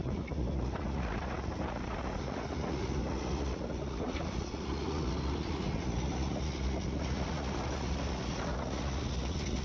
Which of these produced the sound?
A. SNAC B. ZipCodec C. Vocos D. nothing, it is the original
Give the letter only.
C